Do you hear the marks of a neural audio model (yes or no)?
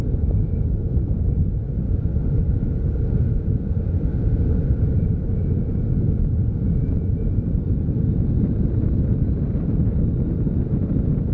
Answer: no